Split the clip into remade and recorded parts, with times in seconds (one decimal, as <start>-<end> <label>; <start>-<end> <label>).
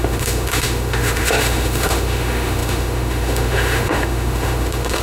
0.0-5.0 remade